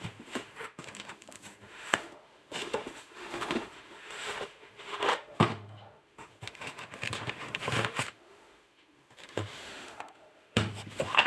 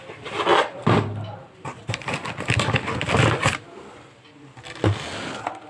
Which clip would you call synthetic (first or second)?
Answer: first